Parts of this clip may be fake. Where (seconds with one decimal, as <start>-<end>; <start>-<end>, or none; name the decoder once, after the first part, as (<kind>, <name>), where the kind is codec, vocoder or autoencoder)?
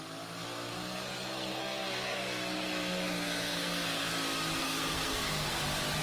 0.7-4.1 (codec, SNAC); 4.6-5.6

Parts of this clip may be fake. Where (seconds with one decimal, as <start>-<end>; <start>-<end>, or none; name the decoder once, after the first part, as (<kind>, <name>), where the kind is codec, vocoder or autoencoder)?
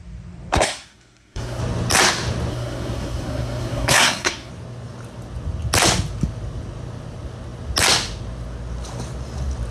0.5-1.6 (codec, SNAC); 2.5-4.5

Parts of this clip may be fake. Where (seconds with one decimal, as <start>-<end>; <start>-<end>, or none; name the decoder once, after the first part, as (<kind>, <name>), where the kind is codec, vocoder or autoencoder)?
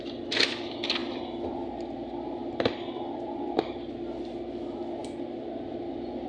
none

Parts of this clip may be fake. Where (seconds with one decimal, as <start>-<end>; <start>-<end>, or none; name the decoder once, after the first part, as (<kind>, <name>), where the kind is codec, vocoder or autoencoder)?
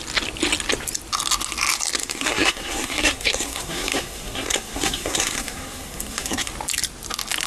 2.0-6.5 (codec, SNAC)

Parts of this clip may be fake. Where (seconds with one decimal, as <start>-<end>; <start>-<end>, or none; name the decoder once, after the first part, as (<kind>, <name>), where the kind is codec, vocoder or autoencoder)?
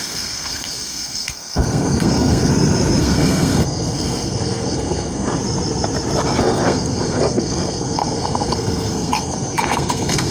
0.0-2.5 (codec, SNAC); 3.0-5.4; 6.4-10.3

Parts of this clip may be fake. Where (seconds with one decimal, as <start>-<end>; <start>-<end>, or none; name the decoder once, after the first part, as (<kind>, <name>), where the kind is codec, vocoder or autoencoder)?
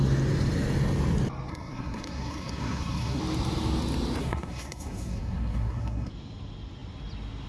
1.5-3.2 (codec, SNAC); 4.2-6.1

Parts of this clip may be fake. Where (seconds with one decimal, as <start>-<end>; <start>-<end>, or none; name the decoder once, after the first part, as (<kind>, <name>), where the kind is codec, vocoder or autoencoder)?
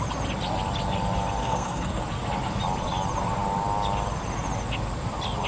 1.4-2.0 (codec, SNAC)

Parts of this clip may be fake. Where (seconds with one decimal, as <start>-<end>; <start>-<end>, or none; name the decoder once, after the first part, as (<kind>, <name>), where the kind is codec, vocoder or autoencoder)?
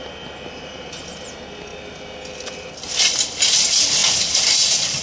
none